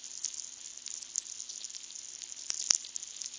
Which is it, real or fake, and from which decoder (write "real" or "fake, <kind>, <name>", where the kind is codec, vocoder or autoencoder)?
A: real